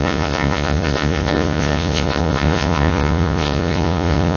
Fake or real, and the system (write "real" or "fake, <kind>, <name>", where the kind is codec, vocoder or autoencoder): fake, vocoder, Vocos